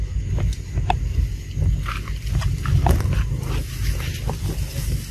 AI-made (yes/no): no